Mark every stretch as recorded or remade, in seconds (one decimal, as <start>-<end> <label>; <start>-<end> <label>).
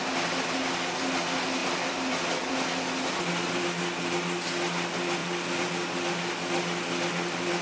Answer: 0.0-1.6 recorded; 1.6-2.5 remade; 2.5-5.2 recorded; 5.2-5.7 remade; 5.7-7.6 recorded